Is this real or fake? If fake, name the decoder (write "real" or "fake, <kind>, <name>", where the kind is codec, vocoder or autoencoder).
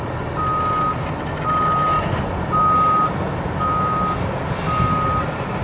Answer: real